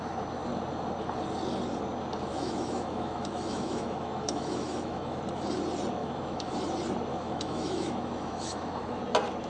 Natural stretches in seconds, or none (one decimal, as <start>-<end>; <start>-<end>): 0.0-2.3; 5.2-6.0; 6.5-7.1; 9.0-9.5